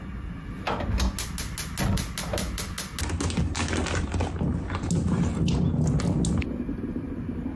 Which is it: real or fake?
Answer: real